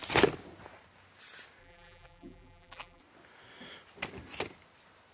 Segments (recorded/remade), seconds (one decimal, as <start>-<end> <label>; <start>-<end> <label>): 0.0-1.6 recorded; 1.6-3.0 remade; 3.0-5.1 recorded